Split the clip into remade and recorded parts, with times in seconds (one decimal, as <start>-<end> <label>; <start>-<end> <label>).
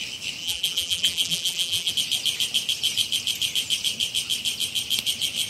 0.0-0.4 recorded; 0.4-1.9 remade; 1.9-5.5 recorded